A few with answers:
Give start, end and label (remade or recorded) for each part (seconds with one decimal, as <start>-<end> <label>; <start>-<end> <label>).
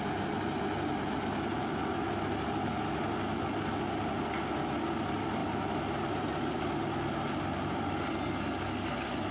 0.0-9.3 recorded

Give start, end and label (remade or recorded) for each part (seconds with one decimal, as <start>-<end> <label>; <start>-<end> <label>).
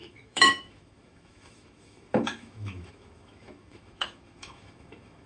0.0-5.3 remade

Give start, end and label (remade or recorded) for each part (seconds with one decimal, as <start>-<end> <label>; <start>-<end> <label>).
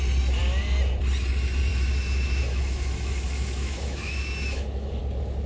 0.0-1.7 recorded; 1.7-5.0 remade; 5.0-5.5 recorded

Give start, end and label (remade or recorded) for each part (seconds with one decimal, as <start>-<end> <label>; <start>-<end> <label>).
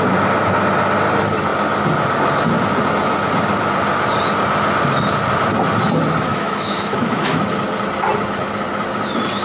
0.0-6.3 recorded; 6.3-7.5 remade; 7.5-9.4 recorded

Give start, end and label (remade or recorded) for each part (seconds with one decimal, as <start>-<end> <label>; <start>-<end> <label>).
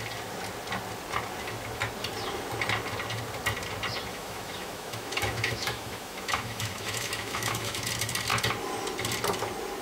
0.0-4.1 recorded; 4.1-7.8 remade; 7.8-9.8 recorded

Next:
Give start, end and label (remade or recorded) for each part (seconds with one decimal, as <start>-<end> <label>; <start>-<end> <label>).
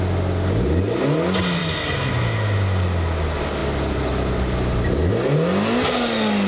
0.0-6.5 recorded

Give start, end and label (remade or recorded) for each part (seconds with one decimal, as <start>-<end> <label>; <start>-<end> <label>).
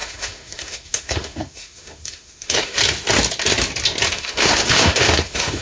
0.0-2.8 remade; 2.8-4.1 recorded; 4.1-5.6 remade